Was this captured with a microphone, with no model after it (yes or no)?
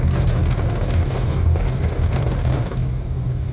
no